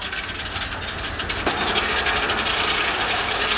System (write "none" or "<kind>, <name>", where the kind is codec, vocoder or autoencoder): none